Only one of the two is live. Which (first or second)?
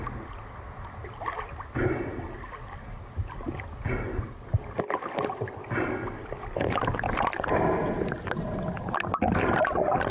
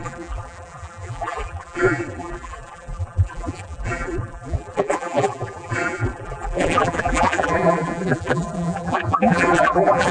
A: first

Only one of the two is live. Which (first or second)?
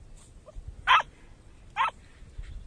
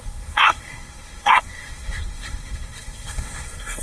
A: first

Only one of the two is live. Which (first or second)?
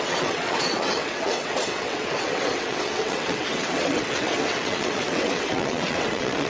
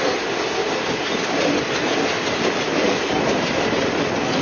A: second